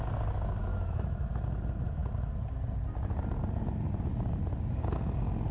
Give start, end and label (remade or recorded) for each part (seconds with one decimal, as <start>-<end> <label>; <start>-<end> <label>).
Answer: 0.0-0.7 recorded; 0.7-1.3 remade; 1.3-5.5 recorded